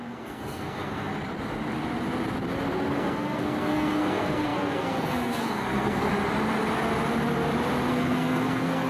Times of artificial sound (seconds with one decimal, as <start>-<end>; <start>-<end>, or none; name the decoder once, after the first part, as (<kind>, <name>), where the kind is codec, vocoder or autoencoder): 0.0-1.1 (codec, SNAC); 2.9-6.1; 7.9-8.9